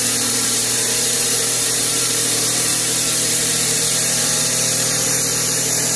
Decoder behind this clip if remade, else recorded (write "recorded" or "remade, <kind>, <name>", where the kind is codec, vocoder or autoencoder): remade, vocoder, BigVGAN v2